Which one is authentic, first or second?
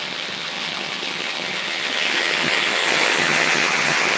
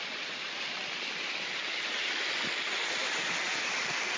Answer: second